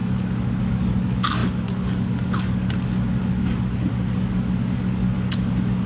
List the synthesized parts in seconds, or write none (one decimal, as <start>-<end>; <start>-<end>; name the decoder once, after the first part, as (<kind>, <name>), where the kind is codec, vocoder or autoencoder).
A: 0.0-5.9 (codec, DAC)

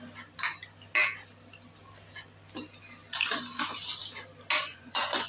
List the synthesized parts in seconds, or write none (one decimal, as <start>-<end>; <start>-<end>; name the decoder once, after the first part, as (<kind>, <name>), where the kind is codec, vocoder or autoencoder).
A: 4.6-5.3 (vocoder, Vocos)

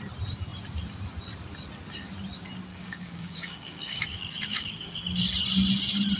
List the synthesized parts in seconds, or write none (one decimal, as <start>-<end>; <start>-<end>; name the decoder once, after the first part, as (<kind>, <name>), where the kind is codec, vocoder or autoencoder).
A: 2.7-5.0 (codec, DAC)

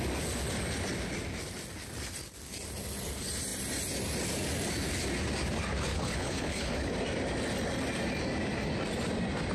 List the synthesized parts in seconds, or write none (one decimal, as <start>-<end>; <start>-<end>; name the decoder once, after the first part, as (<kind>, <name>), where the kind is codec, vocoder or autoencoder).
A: 5.9-6.9 (codec, HILCodec)